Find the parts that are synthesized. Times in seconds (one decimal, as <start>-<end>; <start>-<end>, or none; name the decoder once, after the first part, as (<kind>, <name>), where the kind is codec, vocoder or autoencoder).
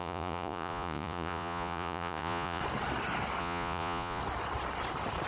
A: 0.0-2.6 (vocoder, Vocos); 3.4-4.2